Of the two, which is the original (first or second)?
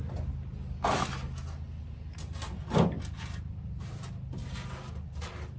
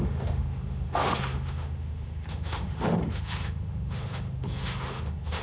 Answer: first